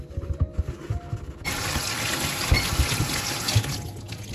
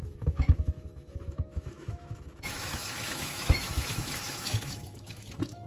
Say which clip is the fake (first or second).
second